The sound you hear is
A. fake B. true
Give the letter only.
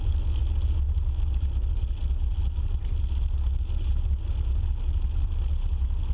B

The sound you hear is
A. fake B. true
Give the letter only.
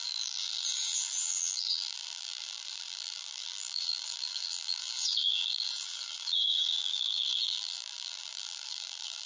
A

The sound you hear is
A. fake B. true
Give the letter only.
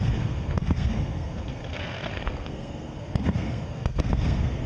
A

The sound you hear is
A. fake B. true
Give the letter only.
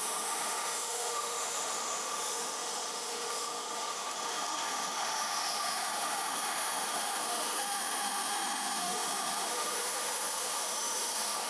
A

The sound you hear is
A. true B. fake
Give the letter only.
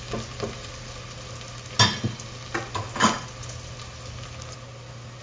A